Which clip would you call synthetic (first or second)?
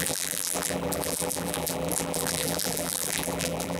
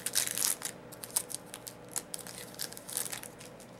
first